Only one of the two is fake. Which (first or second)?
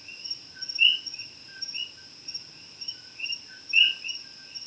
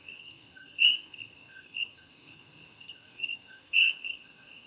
second